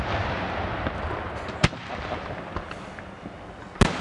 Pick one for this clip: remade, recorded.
recorded